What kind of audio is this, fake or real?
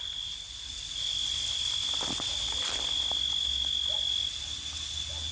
real